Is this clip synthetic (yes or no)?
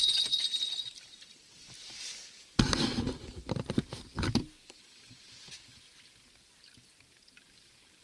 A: no